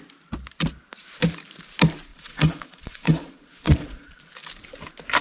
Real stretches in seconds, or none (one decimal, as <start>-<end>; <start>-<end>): 0.0-2.1; 4.3-5.2